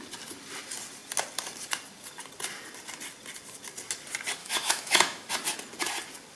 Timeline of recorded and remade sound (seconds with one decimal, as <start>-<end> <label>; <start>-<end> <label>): 0.0-4.4 recorded; 4.4-5.3 remade; 5.3-6.4 recorded